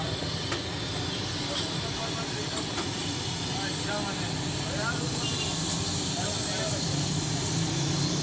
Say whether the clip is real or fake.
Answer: real